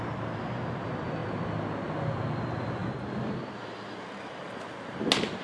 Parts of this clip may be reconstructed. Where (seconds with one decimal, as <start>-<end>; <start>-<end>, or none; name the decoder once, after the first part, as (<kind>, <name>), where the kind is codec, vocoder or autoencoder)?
none